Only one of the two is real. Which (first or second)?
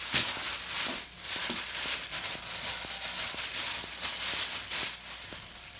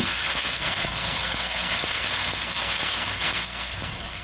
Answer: first